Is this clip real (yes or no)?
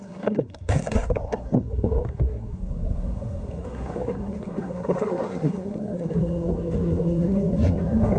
no